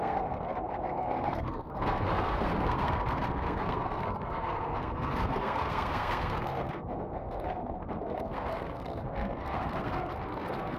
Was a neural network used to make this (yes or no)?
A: yes